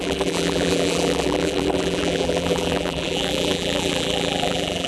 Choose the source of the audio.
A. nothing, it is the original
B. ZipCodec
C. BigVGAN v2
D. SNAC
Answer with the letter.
C